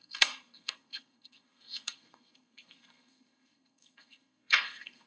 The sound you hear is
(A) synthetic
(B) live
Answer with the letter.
A